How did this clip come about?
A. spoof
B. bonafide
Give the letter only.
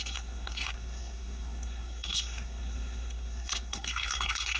A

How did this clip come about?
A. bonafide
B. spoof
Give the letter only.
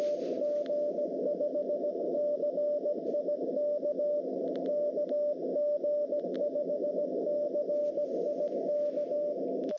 A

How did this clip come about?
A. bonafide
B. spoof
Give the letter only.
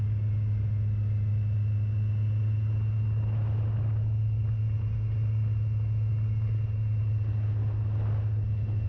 A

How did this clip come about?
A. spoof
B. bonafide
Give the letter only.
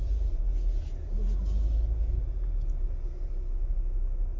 B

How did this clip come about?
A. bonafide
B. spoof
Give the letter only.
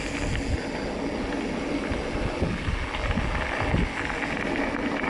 A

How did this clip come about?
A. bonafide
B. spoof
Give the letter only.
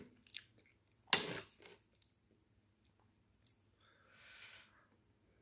A